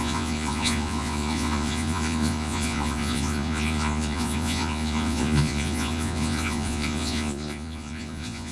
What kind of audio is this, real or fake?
fake